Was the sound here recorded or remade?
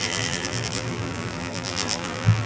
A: remade